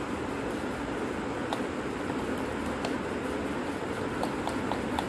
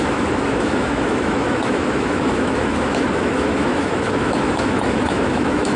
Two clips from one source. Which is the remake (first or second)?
second